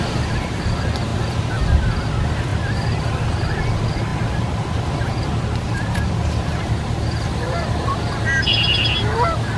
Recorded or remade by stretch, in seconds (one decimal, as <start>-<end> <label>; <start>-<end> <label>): 0.0-9.6 recorded